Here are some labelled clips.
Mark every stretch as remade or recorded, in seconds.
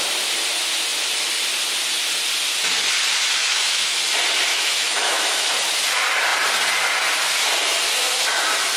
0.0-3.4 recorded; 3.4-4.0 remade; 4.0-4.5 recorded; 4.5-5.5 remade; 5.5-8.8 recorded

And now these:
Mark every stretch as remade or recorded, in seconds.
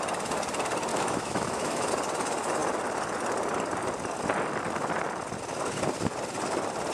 0.0-0.9 recorded; 0.9-1.9 remade; 1.9-6.9 recorded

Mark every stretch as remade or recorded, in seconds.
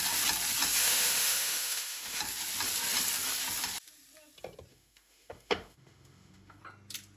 0.0-0.8 recorded; 0.8-2.2 remade; 2.2-4.7 recorded; 4.7-6.6 remade; 6.6-7.2 recorded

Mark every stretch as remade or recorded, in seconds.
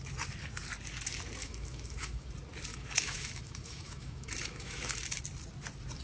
0.0-1.4 recorded; 1.4-2.3 remade; 2.3-2.7 recorded; 2.7-5.2 remade; 5.2-6.0 recorded